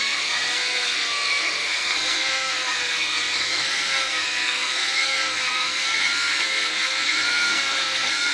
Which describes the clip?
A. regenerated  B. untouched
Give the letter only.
A